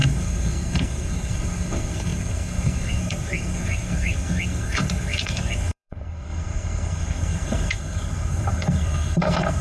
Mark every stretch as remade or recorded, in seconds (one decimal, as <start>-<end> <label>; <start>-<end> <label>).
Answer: 0.0-9.6 remade